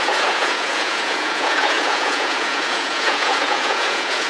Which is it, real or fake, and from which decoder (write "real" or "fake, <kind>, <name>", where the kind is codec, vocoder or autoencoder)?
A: fake, vocoder, Vocos